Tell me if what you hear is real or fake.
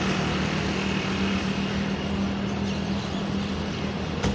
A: real